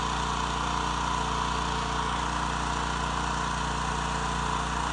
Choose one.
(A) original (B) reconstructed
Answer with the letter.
A